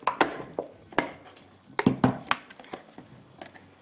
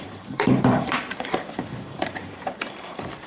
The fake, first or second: second